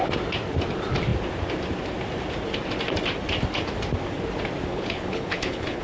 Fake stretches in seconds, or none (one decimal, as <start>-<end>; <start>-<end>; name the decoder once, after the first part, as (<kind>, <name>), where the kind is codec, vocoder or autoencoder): 4.7-5.8 (codec, HILCodec)